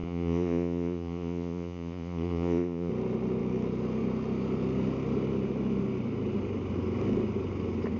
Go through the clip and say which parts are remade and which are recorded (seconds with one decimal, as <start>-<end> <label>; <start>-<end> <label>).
0.0-2.9 remade; 2.9-8.0 recorded